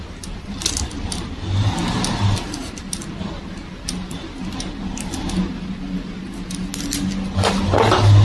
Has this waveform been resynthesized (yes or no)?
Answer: no